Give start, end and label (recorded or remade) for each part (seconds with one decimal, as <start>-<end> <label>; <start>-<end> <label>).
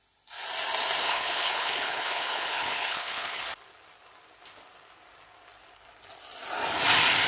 0.0-1.0 recorded; 1.0-3.4 remade; 3.4-7.3 recorded